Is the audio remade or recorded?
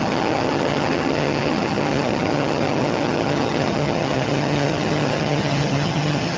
remade